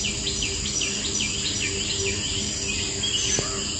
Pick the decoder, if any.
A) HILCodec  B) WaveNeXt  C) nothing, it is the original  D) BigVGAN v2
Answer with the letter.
C